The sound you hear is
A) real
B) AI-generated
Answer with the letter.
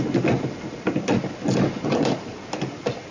A